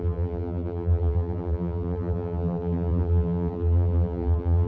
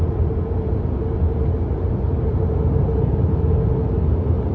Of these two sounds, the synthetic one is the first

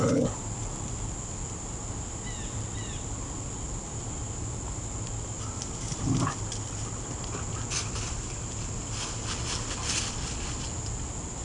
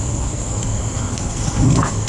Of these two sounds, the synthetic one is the second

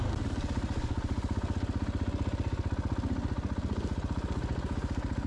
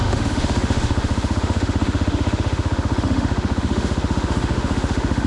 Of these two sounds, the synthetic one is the second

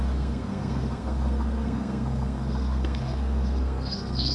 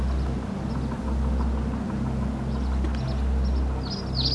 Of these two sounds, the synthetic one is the first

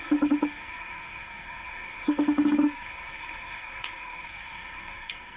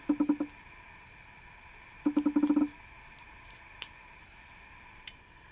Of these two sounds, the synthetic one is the first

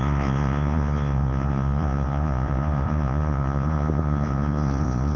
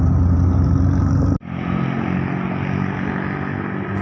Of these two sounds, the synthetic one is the first